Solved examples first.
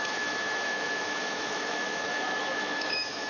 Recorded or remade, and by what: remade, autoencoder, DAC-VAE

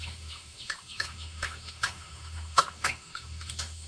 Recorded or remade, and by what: remade, autoencoder, DAC-VAE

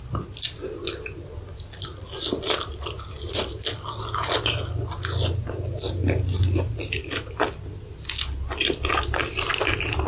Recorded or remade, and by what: recorded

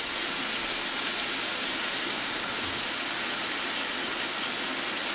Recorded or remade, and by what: recorded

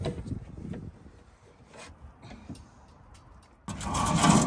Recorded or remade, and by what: recorded